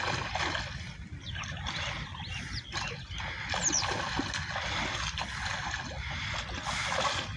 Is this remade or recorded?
recorded